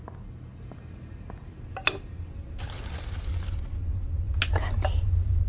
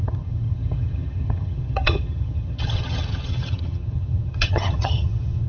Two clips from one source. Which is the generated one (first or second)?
second